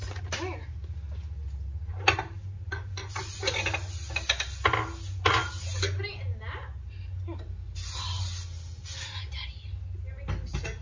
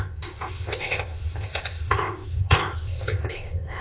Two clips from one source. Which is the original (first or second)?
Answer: first